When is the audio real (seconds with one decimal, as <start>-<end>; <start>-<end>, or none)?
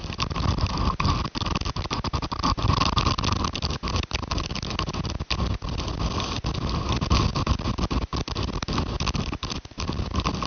0.0-10.5